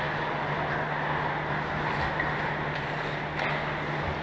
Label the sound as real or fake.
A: real